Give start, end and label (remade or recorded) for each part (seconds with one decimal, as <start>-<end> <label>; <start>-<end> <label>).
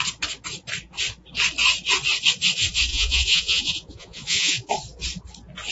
0.0-2.9 recorded; 2.9-4.7 remade; 4.7-5.7 recorded